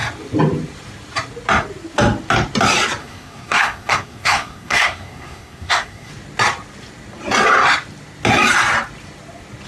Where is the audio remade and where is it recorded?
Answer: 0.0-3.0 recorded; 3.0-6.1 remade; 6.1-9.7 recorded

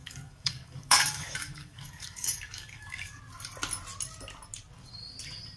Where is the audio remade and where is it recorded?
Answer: 0.0-3.2 remade; 3.2-5.6 recorded

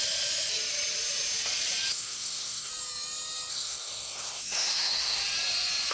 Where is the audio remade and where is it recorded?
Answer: 0.0-1.9 recorded; 1.9-2.7 remade; 2.7-3.5 recorded; 3.5-5.2 remade; 5.2-5.9 recorded

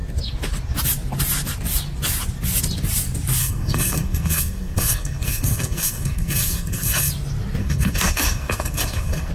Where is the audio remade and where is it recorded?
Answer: 0.0-3.4 recorded; 3.4-7.1 remade; 7.1-7.6 recorded; 7.6-9.3 remade

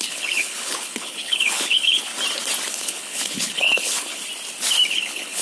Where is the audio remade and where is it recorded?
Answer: 0.0-2.1 remade; 2.1-2.7 recorded; 2.7-4.2 remade; 4.2-4.9 recorded; 4.9-5.4 remade